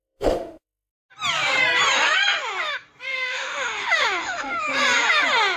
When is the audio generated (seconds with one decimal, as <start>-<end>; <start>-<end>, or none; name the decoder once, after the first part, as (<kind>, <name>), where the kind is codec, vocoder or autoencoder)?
0.0-0.9 (autoencoder, DAC-VAE); 3.1-4.6